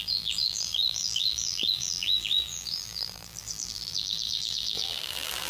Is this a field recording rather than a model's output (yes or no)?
no